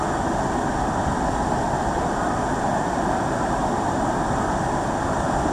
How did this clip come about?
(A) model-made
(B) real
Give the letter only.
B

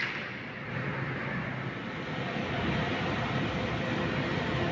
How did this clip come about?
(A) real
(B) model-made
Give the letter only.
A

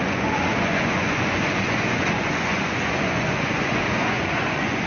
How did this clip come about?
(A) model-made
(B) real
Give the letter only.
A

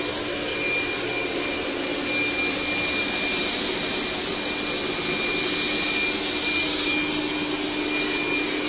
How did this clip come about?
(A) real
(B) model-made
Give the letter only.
A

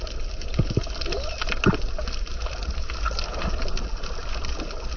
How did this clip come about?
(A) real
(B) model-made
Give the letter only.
A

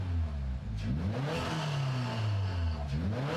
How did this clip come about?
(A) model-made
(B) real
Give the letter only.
B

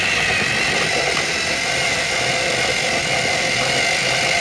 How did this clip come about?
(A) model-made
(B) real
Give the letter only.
B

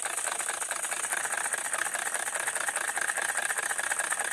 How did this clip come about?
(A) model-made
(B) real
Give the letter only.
B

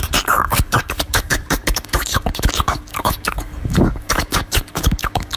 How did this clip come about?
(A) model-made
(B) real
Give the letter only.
A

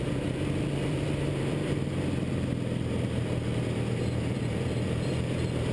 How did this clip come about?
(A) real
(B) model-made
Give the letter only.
B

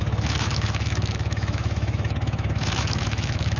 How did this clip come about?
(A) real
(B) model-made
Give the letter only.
B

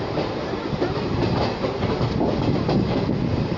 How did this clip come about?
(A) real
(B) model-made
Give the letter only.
A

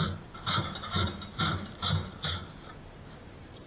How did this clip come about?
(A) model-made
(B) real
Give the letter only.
A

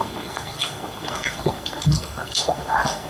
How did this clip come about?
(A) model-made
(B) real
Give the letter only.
A